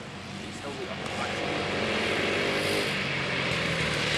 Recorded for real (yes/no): yes